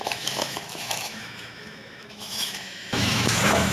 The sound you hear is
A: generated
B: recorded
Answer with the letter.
A